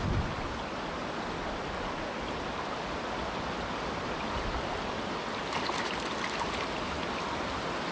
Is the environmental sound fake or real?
real